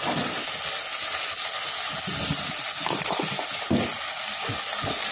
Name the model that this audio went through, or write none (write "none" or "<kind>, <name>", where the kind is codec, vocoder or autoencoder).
none